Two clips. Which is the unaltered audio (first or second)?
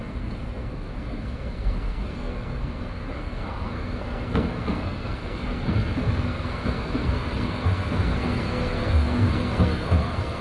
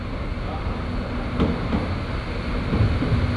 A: second